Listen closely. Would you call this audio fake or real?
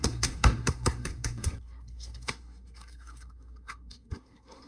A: fake